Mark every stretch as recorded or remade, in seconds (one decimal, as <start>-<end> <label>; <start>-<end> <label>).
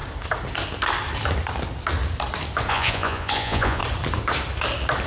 0.0-2.7 recorded; 2.7-3.8 remade; 3.8-5.1 recorded